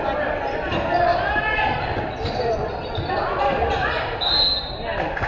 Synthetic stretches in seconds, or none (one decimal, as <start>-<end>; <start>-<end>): none